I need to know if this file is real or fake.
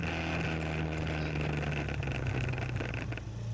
real